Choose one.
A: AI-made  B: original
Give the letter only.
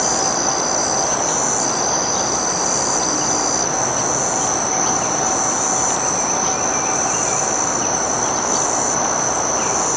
B